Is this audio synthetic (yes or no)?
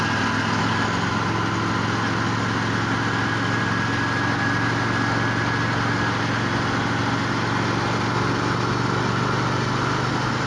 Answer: no